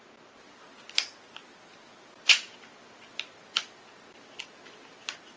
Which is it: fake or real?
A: real